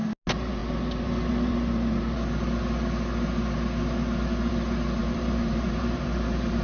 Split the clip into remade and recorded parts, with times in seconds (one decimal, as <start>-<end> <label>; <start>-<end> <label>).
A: 0.0-5.0 recorded; 5.0-6.6 remade